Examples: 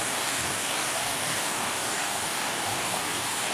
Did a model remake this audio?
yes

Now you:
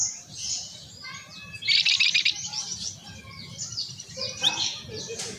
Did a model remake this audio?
no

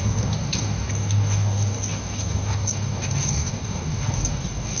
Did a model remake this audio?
yes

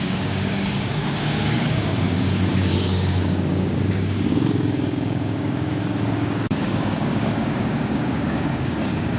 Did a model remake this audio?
yes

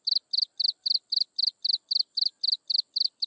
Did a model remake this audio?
no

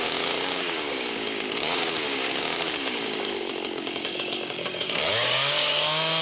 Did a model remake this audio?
yes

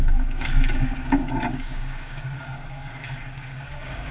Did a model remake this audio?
yes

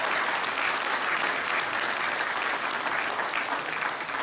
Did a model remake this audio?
no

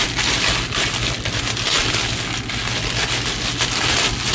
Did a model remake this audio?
no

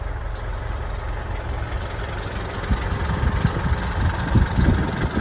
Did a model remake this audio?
no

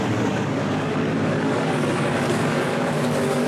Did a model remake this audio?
yes